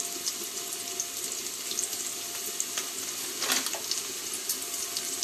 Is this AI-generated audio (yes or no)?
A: no